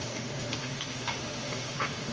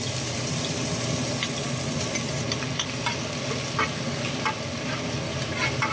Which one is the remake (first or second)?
first